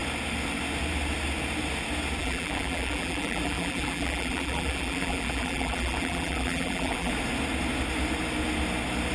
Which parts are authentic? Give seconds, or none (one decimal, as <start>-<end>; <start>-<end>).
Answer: 0.0-2.2; 7.1-9.1